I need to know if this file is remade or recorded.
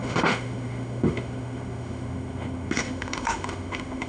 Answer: remade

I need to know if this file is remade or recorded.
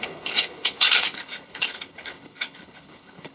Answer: remade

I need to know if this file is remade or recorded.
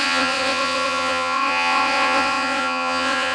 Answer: remade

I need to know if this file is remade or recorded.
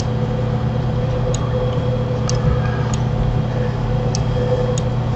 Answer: recorded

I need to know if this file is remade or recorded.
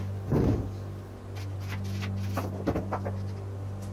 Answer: recorded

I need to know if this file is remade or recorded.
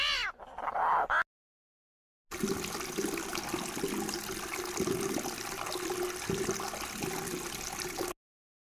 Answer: recorded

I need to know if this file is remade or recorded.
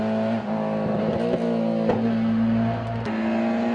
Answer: recorded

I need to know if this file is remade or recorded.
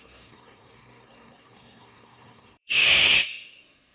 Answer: remade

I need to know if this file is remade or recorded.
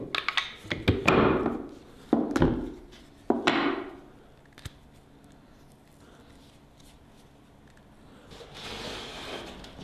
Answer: recorded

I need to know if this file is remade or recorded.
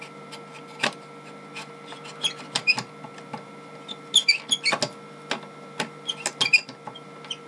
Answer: recorded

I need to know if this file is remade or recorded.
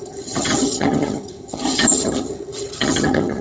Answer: remade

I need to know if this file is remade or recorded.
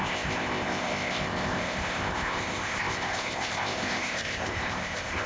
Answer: remade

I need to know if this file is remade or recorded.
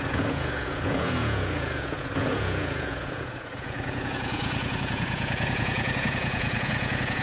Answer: remade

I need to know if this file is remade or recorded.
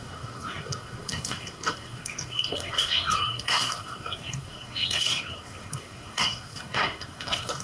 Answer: remade